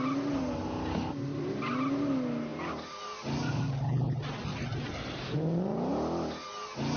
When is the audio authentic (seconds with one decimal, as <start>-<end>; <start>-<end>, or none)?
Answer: 0.0-7.0